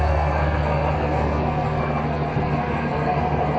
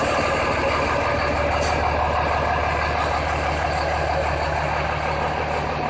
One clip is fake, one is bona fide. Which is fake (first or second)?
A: first